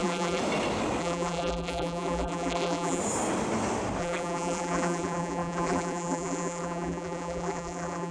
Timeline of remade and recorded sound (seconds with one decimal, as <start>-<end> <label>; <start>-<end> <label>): 0.0-0.4 remade; 0.4-1.0 recorded; 1.0-3.0 remade; 3.0-4.0 recorded; 4.0-8.1 remade